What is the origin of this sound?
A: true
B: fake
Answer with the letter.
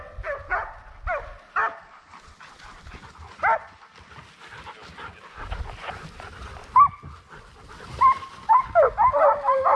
A